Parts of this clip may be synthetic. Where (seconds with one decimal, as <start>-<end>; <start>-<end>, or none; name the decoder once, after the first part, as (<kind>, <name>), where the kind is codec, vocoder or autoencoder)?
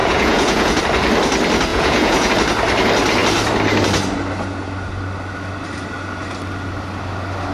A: 0.0-0.8 (vocoder, Vocos); 1.7-2.3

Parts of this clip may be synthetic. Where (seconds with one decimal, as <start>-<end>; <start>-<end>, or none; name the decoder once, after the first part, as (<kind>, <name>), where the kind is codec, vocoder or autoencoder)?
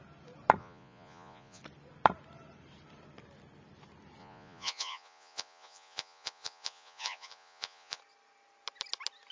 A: 0.6-1.6 (vocoder, Vocos); 4.2-8.0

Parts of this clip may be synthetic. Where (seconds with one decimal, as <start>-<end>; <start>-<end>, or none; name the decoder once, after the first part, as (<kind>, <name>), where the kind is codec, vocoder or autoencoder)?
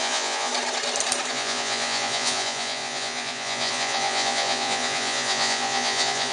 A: 0.0-0.5 (vocoder, Vocos); 1.3-6.3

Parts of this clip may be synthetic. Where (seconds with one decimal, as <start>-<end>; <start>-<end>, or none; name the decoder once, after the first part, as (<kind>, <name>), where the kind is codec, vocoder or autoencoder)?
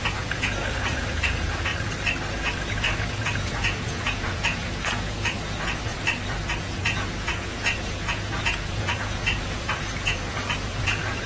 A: 0.0-1.7 (vocoder, Vocos); 2.3-5.9; 6.6-11.3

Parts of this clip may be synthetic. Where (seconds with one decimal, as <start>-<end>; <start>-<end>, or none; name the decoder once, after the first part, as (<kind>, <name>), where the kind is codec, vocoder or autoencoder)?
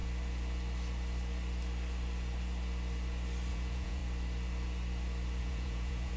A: 3.5-4.0 (vocoder, Vocos); 5.4-6.2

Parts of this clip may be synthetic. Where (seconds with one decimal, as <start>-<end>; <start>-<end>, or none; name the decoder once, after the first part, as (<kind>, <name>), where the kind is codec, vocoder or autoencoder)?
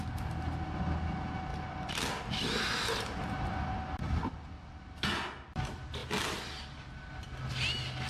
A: none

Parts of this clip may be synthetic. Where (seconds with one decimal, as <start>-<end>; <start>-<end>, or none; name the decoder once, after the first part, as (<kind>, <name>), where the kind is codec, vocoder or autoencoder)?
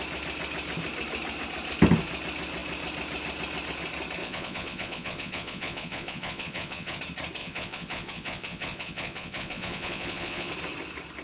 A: 4.2-7.0 (vocoder, Vocos); 7.4-10.5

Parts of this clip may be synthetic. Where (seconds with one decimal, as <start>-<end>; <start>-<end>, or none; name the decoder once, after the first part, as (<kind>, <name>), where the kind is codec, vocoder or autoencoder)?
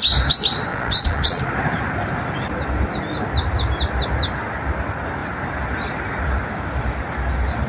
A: 0.7-1.4 (vocoder, Vocos)